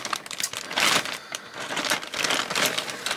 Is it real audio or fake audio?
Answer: real